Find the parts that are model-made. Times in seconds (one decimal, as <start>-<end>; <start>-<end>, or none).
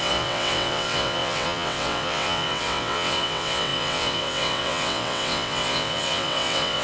0.0-6.8